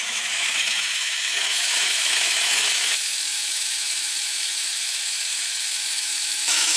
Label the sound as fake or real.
fake